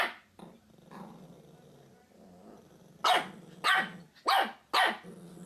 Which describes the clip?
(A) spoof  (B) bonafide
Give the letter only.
B